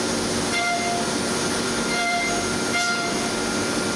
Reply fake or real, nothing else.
fake